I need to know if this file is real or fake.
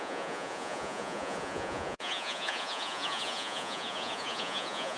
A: fake